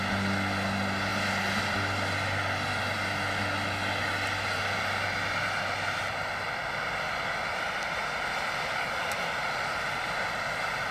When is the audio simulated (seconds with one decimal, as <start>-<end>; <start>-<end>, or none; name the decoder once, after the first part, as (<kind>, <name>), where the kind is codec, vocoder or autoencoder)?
none